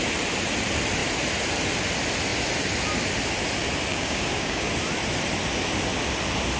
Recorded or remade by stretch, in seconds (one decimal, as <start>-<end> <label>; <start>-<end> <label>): 0.0-3.9 recorded; 3.9-4.7 remade; 4.7-6.6 recorded